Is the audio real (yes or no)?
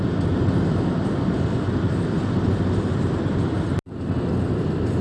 yes